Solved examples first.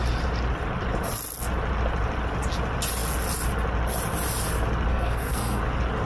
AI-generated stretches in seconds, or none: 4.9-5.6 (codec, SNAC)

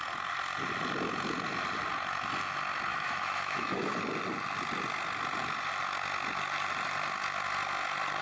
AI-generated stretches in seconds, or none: 2.9-4.0 (autoencoder, DAC-VAE)

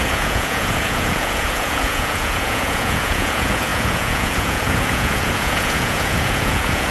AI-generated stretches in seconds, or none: 0.0-6.9 (vocoder, Vocos)

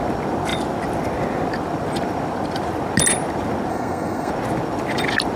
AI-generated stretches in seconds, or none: 3.7-4.3 (codec, SNAC)

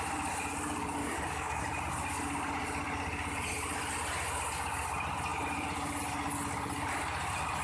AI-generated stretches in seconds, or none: 1.0-1.6 (codec, DAC)